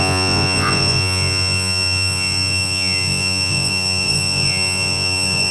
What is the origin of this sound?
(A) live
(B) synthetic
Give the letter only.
B